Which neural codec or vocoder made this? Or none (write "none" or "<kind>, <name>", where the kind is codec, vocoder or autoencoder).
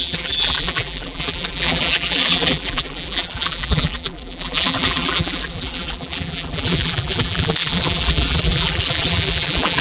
vocoder, BigVGAN v2